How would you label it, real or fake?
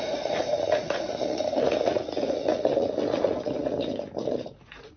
fake